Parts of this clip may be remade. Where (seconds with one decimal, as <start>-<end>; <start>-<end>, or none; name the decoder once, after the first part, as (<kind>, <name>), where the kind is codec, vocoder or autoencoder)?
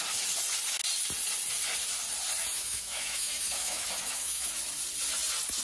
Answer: 2.4-4.5 (autoencoder, DAC-VAE)